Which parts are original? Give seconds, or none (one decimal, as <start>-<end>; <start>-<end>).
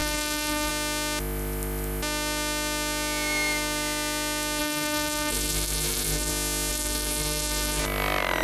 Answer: 0.7-4.6; 6.3-6.7; 7.8-8.4